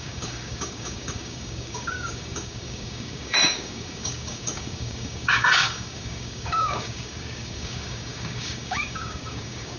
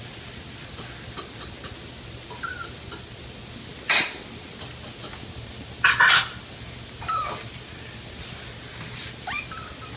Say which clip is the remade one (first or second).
first